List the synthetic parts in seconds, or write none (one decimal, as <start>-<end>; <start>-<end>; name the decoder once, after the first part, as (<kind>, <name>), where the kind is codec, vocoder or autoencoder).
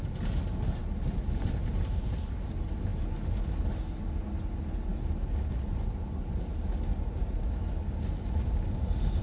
none